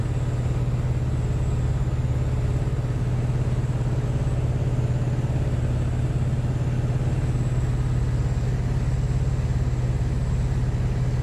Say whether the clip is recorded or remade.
recorded